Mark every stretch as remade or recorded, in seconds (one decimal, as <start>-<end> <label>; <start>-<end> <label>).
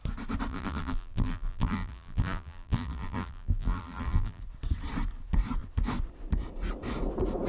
0.0-0.5 recorded; 0.5-4.4 remade; 4.4-7.5 recorded